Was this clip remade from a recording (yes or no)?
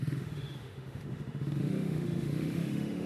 yes